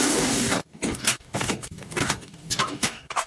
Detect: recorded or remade remade